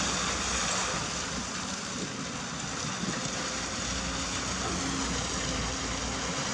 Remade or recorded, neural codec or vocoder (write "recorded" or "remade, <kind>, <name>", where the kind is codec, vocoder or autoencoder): recorded